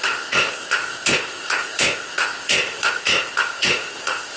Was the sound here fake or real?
fake